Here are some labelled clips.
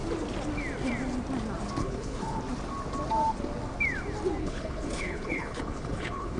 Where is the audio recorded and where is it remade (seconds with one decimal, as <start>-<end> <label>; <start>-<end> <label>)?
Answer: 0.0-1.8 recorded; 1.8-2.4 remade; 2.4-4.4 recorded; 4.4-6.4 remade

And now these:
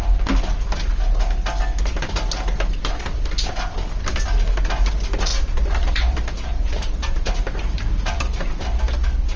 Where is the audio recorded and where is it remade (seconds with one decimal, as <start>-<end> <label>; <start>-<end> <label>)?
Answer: 0.0-5.3 recorded; 5.3-8.6 remade; 8.6-9.4 recorded

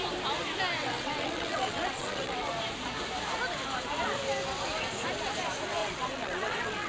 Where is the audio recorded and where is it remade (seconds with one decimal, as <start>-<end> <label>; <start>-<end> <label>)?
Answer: 0.0-0.8 recorded; 0.8-2.5 remade; 2.5-5.8 recorded; 5.8-6.9 remade

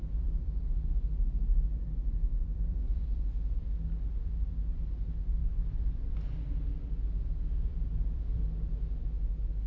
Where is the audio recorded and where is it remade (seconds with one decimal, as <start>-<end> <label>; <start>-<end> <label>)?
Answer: 0.0-2.3 recorded; 2.3-3.2 remade; 3.2-7.7 recorded; 7.7-8.4 remade; 8.4-9.7 recorded

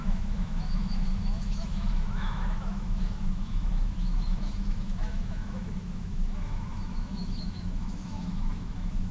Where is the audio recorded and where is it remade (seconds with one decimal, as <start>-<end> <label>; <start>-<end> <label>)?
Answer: 0.0-9.1 remade

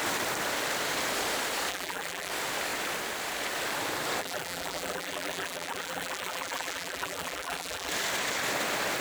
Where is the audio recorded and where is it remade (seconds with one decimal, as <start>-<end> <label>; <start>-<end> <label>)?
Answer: 0.0-1.7 recorded; 1.7-2.3 remade; 2.3-4.2 recorded; 4.2-7.9 remade; 7.9-9.0 recorded

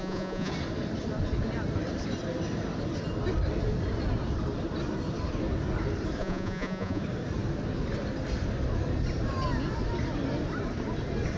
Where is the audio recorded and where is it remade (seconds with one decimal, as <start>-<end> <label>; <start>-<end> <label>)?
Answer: 0.0-0.5 remade; 0.5-6.2 recorded; 6.2-7.0 remade; 7.0-11.4 recorded

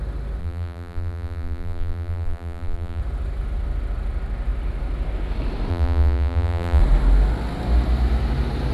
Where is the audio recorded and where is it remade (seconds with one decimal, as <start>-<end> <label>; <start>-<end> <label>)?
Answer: 0.0-0.4 recorded; 0.4-3.0 remade; 3.0-5.7 recorded; 5.7-6.8 remade; 6.8-8.7 recorded